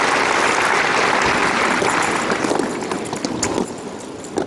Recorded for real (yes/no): yes